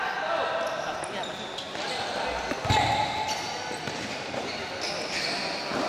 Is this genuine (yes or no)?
yes